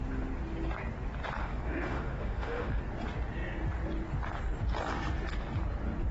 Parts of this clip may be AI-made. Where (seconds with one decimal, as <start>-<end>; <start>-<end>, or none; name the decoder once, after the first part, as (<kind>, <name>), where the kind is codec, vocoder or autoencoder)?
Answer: 1.4-2.8 (autoencoder, DAC-VAE)